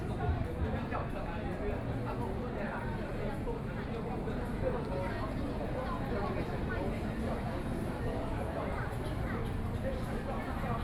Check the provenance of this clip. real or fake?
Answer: real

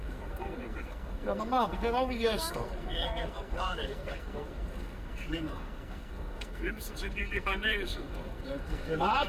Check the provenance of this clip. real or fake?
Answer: fake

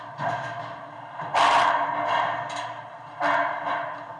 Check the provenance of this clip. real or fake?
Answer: real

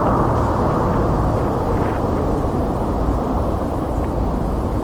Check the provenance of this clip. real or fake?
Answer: fake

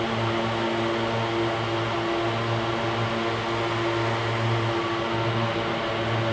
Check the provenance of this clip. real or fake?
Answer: real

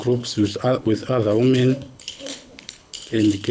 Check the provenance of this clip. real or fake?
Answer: fake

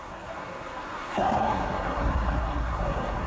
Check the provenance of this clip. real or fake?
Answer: fake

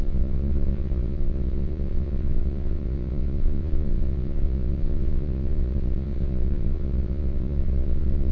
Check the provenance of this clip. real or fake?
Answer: fake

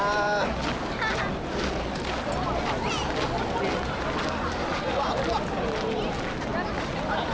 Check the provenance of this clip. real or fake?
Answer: real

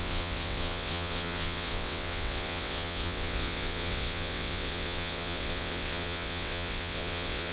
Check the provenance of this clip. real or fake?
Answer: fake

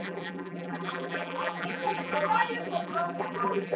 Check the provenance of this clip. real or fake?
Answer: fake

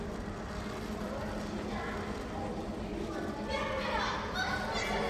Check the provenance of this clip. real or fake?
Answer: real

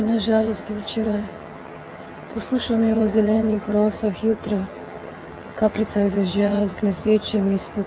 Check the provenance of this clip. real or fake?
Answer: fake